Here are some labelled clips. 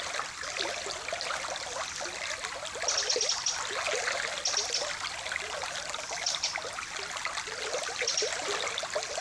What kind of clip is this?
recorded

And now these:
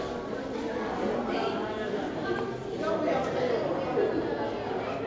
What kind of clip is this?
recorded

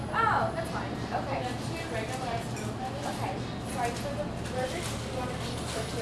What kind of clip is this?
recorded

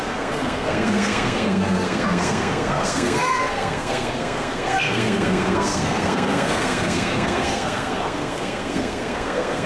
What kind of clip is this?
remade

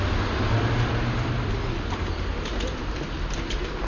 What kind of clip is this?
recorded